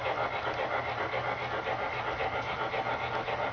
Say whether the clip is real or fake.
real